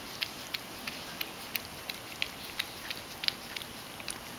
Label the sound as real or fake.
real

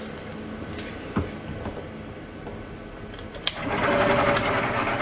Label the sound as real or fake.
real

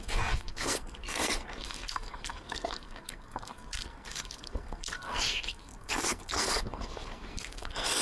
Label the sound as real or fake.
fake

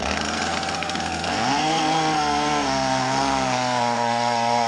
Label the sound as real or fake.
fake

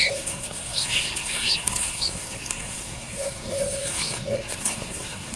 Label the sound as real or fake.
fake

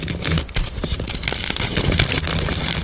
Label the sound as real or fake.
real